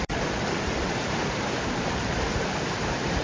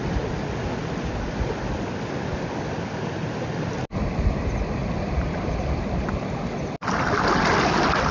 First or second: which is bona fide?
second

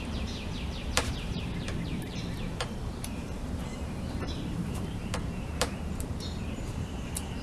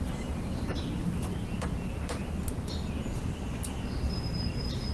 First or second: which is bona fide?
second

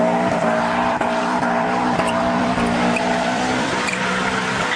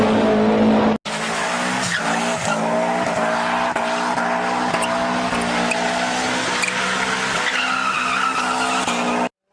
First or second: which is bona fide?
second